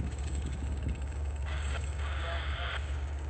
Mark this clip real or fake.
fake